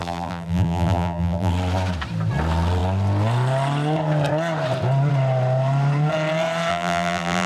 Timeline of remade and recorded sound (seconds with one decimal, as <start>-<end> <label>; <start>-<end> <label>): 0.0-1.5 remade; 1.5-6.7 recorded; 6.7-7.5 remade